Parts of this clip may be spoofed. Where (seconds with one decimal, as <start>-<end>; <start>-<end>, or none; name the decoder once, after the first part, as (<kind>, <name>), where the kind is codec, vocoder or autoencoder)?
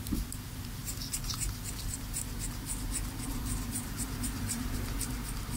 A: 0.8-2.0 (vocoder, BigVGAN v2); 3.3-5.1